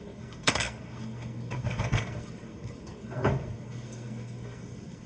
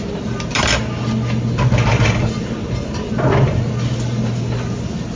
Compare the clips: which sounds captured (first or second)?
second